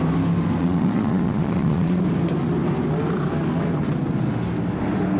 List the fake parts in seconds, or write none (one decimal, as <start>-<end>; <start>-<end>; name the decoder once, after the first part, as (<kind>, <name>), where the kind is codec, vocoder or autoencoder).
0.6-2.0 (vocoder, Vocos)